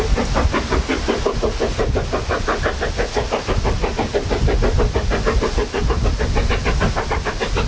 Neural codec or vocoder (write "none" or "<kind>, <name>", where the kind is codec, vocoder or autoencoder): none